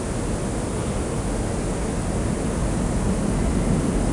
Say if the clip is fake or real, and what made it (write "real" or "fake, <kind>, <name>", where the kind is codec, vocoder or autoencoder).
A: real